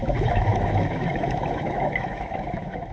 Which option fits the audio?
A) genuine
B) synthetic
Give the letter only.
B